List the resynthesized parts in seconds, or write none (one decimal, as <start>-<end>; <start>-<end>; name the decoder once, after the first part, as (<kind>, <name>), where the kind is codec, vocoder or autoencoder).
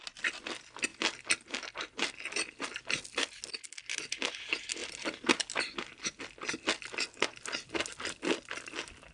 none